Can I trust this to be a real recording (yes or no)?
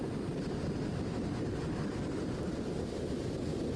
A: yes